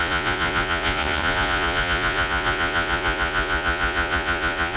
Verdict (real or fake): fake